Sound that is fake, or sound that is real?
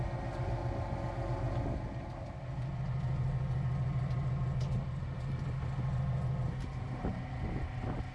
real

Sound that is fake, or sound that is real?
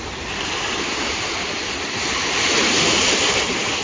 real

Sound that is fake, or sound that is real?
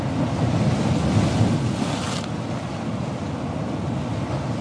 real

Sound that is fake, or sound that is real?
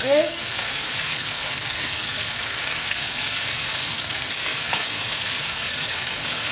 fake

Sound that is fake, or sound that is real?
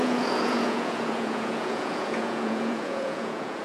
fake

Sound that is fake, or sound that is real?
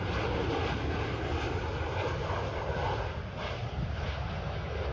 real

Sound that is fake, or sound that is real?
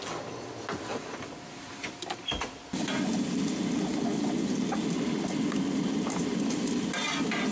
real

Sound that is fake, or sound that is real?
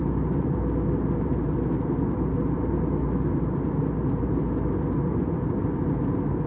real